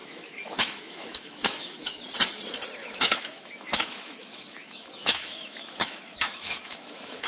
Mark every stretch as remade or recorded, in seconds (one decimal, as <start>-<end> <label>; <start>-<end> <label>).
0.0-2.0 remade; 2.0-2.8 recorded; 2.8-7.3 remade